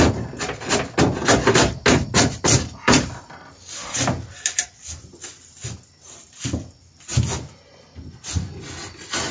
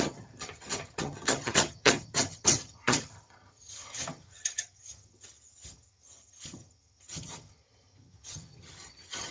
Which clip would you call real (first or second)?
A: first